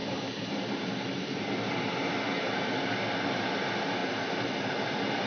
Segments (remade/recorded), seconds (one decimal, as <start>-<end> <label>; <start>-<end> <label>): 0.0-5.3 recorded